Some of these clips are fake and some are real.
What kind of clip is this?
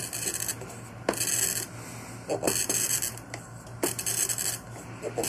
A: real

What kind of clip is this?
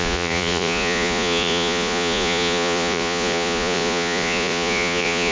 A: fake